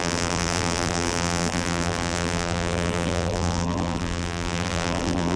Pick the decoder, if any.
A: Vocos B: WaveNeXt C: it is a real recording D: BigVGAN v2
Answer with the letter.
D